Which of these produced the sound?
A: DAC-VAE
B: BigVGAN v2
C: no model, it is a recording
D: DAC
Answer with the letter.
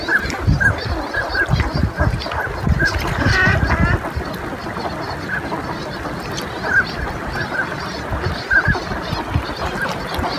C